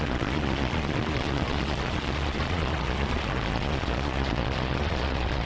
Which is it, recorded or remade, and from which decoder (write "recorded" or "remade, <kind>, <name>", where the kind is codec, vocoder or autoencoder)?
remade, vocoder, Vocos